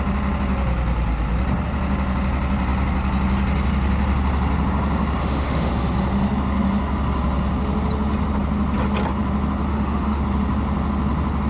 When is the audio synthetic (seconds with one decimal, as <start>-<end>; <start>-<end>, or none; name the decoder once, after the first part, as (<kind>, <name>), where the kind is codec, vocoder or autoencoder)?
5.2-5.7 (autoencoder, DAC-VAE); 9.7-10.2